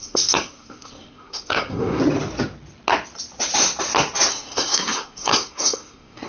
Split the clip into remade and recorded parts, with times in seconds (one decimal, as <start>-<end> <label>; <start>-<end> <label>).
0.0-2.0 remade; 2.0-4.3 recorded; 4.3-6.3 remade